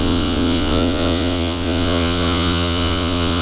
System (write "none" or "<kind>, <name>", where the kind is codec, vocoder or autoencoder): vocoder, Vocos